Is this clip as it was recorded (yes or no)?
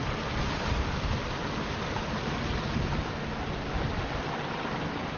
yes